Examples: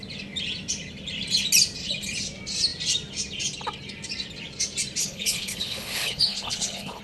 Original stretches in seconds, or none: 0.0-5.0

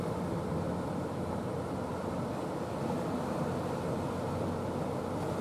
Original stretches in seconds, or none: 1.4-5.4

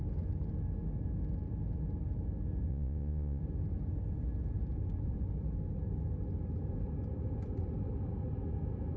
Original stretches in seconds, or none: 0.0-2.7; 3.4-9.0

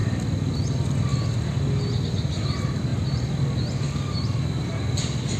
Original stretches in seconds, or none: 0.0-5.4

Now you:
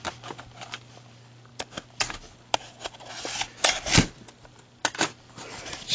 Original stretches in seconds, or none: 0.0-5.9

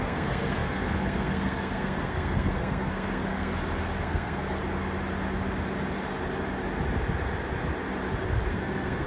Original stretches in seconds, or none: 3.5-4.0; 4.6-8.5

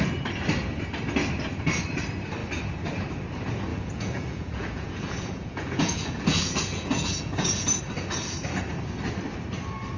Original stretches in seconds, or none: 0.0-3.7; 7.8-10.0